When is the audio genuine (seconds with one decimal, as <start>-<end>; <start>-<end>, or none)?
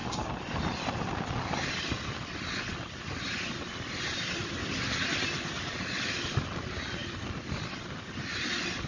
0.0-4.4; 5.9-7.0; 7.5-8.9